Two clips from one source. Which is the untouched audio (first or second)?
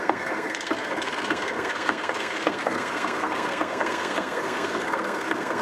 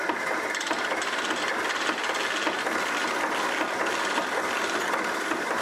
second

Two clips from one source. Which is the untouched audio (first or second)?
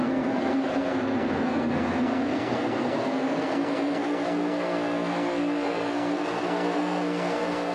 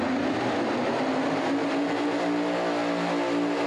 second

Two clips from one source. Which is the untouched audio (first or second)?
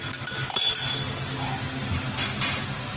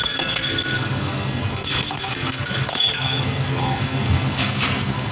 first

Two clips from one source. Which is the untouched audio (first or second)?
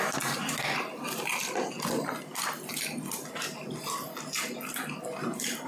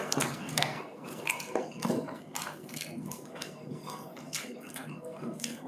first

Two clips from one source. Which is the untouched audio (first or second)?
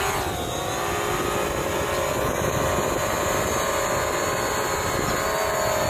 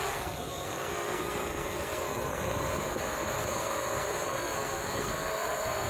first